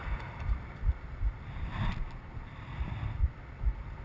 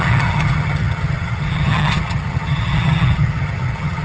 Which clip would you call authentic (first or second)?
first